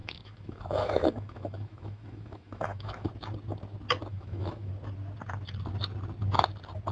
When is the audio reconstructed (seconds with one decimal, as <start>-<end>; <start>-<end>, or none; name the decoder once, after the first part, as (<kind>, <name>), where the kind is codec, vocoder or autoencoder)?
0.0-3.1 (autoencoder, DAC-VAE); 4.1-4.7